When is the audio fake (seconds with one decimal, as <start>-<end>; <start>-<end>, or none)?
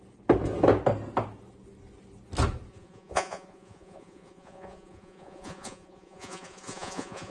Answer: 2.7-7.3